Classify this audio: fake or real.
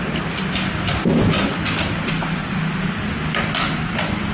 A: real